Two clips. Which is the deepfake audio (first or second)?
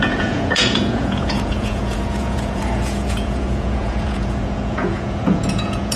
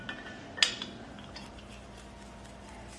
first